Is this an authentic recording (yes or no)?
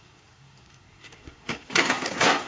no